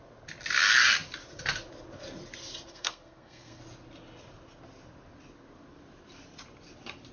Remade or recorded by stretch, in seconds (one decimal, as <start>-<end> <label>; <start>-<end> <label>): 0.0-2.7 recorded; 2.7-3.6 remade; 3.6-7.1 recorded